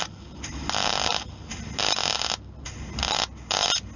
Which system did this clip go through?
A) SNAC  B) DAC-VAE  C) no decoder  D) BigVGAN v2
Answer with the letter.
C